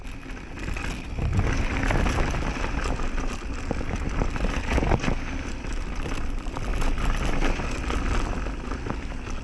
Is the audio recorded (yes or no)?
yes